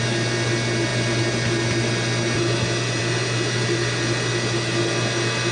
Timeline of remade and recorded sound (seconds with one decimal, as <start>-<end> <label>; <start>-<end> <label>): 0.0-5.5 recorded